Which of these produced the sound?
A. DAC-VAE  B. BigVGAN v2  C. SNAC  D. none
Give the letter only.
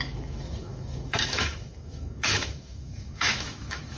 A